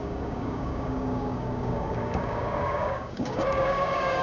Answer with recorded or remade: remade